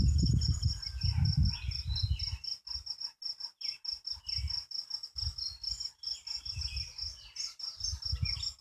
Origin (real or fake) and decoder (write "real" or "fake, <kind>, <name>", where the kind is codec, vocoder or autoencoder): real